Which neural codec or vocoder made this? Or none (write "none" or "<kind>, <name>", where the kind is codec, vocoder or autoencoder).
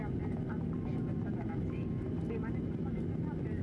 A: none